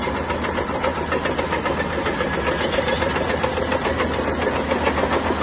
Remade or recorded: recorded